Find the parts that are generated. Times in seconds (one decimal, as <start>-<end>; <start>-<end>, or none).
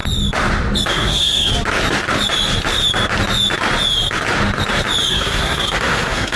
0.9-1.5; 5.1-6.4